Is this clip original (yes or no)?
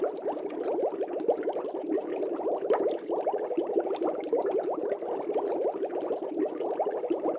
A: yes